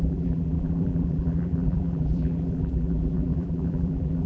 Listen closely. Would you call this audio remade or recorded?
remade